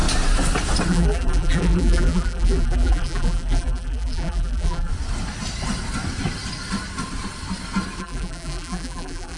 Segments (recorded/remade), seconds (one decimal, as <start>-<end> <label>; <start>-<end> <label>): 0.0-0.9 recorded; 0.9-4.9 remade; 4.9-8.0 recorded; 8.0-9.4 remade